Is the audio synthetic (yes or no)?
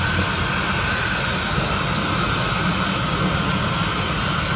no